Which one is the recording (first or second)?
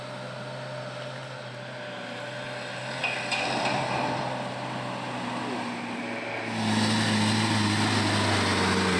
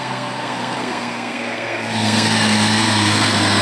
first